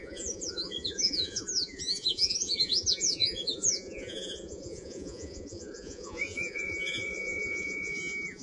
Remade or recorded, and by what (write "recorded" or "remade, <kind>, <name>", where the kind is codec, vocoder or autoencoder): remade, vocoder, Vocos